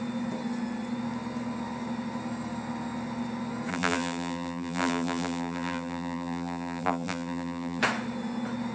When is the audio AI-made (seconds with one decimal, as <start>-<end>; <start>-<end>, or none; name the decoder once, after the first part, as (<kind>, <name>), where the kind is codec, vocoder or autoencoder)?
3.7-7.8 (vocoder, BigVGAN v2)